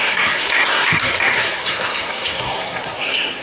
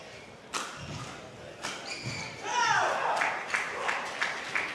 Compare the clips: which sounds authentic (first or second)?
second